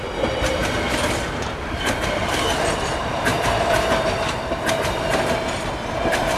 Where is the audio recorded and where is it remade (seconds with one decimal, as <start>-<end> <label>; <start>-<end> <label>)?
0.0-0.6 remade; 0.6-1.9 recorded; 1.9-3.3 remade; 3.3-5.7 recorded; 5.7-6.4 remade